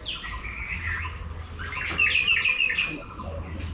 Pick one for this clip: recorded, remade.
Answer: recorded